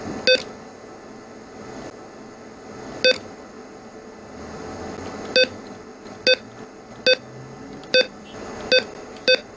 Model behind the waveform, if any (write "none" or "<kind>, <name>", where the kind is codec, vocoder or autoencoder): none